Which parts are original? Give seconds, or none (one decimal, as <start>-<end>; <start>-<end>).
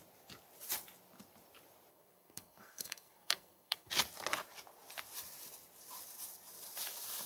0.0-1.9; 3.9-7.3